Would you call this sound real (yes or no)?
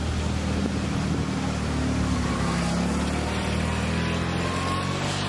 yes